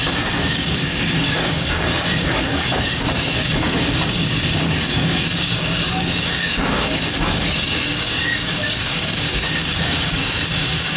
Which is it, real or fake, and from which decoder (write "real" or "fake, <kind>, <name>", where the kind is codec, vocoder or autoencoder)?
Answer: fake, codec, DAC